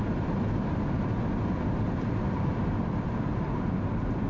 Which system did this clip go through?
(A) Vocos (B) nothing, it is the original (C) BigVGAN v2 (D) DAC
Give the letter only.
B